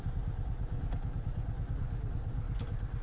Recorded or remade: recorded